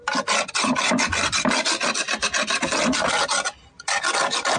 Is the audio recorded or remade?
recorded